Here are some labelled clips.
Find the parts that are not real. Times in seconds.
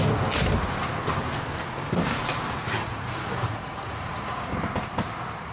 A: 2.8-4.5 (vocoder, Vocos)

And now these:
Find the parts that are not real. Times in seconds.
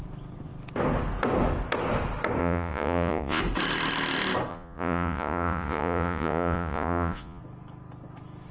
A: 2.4-3.4 (vocoder, Vocos); 4.5-7.4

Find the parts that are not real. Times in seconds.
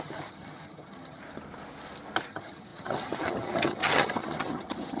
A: 0.0-1.2 (vocoder, HiFi-GAN); 2.3-5.0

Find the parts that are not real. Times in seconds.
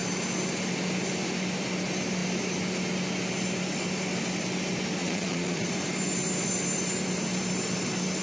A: 5.0-5.7 (vocoder, Vocos)